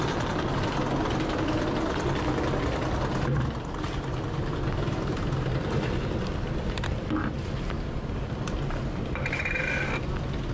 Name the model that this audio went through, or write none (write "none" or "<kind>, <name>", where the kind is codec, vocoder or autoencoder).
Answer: none